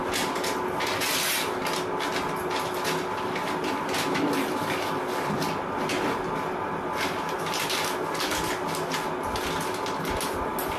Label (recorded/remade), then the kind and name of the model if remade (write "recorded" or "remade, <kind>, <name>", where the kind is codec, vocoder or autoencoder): recorded